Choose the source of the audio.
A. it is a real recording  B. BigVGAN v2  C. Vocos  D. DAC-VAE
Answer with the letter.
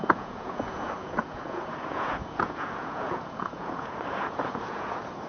C